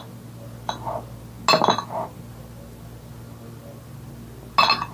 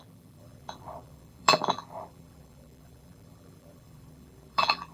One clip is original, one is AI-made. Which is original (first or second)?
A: first